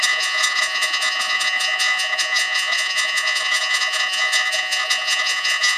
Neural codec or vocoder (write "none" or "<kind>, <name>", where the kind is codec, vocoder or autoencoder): vocoder, Vocos